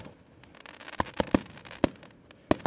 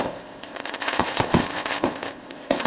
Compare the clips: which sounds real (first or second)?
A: first